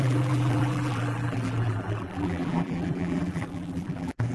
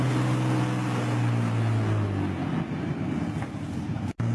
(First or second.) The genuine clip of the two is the second